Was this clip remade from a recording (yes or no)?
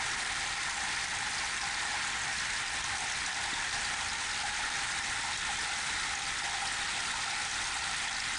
no